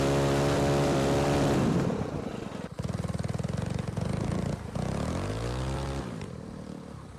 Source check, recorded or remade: recorded